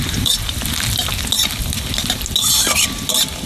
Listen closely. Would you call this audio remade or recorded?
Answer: recorded